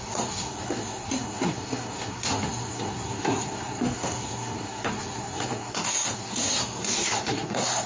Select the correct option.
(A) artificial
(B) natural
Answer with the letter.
A